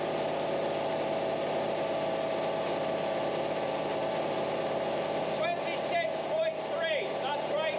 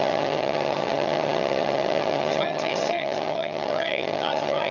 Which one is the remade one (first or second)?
second